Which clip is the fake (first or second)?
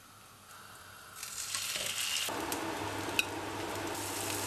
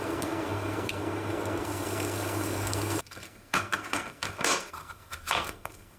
second